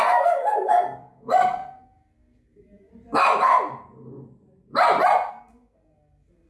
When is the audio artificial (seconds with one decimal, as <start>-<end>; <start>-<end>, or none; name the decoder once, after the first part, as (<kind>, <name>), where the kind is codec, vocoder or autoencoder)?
0.0-2.9 (codec, SNAC); 5.3-6.5